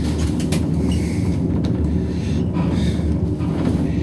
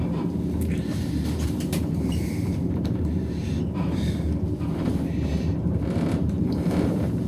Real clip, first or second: first